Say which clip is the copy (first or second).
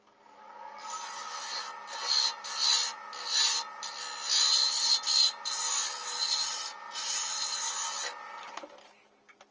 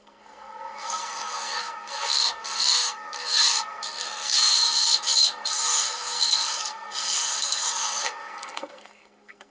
second